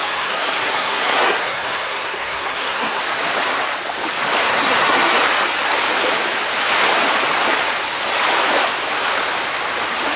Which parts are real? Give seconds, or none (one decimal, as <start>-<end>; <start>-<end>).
3.0-4.4; 5.2-10.2